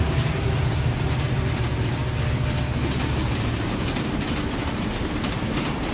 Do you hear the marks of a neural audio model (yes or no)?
no